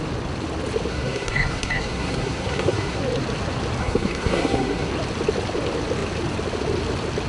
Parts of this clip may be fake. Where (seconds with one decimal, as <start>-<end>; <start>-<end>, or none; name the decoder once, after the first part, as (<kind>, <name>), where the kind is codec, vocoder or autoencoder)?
0.9-3.0 (codec, SNAC); 3.8-4.9